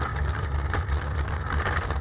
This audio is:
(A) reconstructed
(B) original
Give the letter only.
B